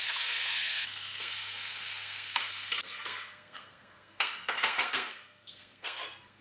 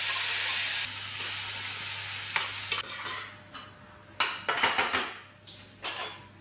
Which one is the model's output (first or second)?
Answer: first